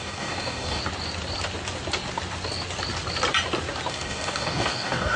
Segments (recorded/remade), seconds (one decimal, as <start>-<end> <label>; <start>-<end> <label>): 0.0-0.8 remade; 0.8-3.9 recorded; 3.9-5.2 remade